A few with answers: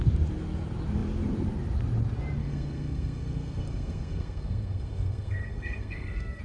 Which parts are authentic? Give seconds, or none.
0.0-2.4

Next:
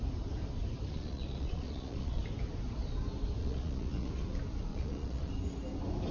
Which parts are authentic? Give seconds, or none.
0.0-0.9; 2.2-3.4; 4.1-4.7; 5.3-6.1

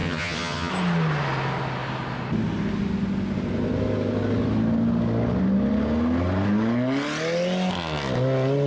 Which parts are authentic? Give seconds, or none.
0.7-8.7

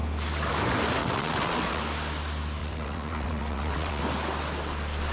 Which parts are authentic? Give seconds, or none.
0.0-1.0; 1.8-2.6; 4.0-5.1

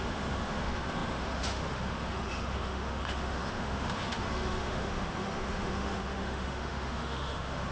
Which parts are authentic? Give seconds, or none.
none

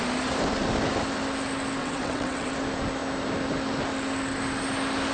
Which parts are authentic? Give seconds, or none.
0.0-1.8; 2.5-5.1

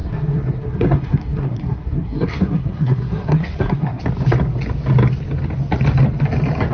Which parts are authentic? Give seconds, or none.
4.0-6.7